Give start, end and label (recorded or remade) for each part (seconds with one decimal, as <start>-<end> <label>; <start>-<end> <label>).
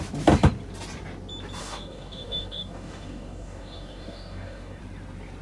0.0-1.6 recorded; 1.6-4.8 remade; 4.8-5.4 recorded